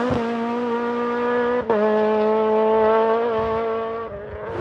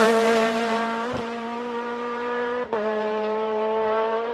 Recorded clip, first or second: first